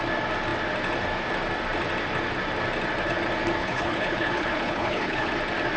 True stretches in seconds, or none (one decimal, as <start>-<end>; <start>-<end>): 0.0-3.6; 5.3-5.8

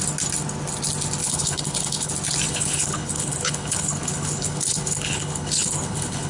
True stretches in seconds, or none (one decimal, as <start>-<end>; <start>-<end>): 0.0-1.2; 2.1-2.5

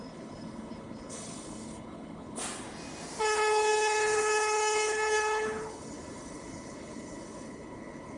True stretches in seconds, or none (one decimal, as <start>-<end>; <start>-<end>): 2.4-3.2